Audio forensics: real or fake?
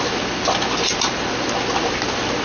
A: real